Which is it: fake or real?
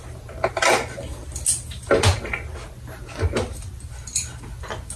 real